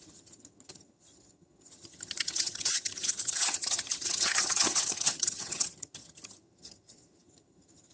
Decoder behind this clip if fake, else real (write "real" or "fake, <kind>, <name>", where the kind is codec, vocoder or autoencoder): fake, vocoder, HiFi-GAN